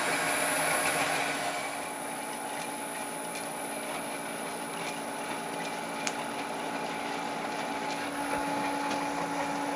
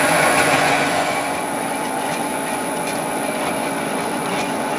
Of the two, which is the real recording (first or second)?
first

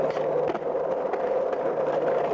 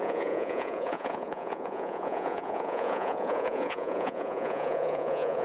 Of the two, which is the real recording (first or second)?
first